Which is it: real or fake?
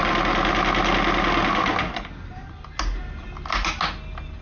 real